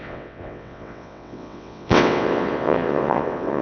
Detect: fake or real fake